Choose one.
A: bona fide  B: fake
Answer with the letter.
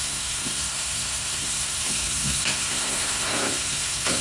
B